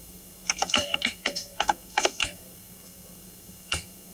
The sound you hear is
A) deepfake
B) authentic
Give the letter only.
A